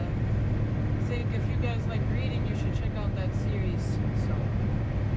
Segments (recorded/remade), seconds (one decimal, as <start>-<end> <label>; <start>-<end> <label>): 0.0-5.2 recorded